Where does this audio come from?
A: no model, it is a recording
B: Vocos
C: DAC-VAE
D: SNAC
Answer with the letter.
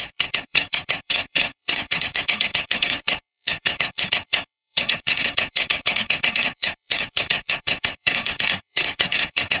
D